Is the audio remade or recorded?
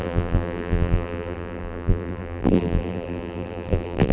remade